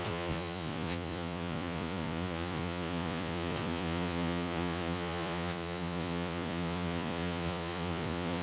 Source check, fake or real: fake